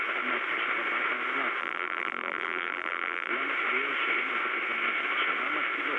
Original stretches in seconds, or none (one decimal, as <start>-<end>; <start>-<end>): 0.0-1.6; 3.3-6.0